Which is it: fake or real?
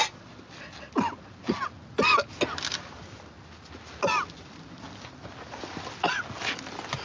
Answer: real